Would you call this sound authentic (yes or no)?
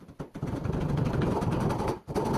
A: yes